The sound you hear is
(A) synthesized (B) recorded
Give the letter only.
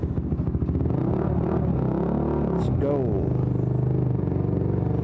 B